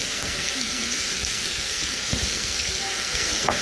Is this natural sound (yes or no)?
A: no